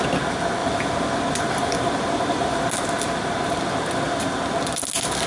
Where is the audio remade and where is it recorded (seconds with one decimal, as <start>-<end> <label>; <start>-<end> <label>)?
0.0-0.6 recorded; 0.6-2.7 remade; 2.7-5.3 recorded